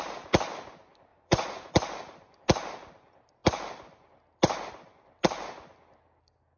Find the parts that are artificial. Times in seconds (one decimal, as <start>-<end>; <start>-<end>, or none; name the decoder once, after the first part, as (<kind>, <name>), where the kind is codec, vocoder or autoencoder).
1.1-1.7 (vocoder, Vocos)